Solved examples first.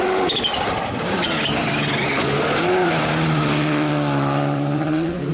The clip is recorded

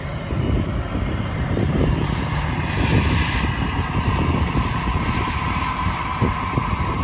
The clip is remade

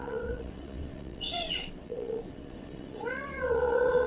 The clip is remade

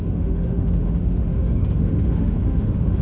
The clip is remade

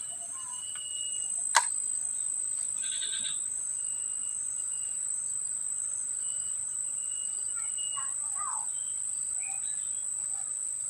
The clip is recorded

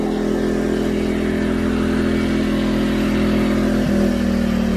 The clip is recorded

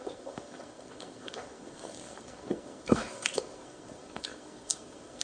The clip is remade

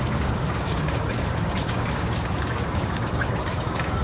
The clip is remade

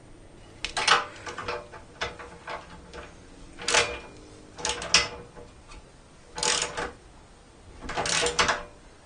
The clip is recorded